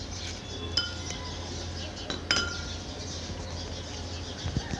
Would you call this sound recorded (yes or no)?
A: yes